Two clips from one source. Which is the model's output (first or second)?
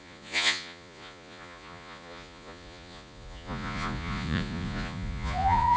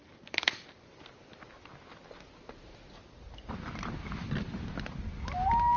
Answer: first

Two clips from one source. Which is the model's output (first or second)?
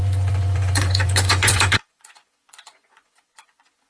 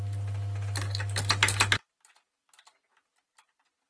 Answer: first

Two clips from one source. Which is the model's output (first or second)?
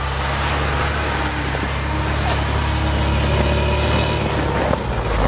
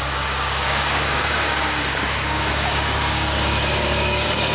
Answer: second